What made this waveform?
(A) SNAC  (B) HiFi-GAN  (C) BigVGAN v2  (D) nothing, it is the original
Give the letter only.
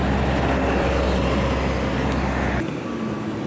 D